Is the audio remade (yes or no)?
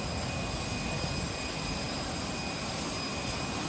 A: no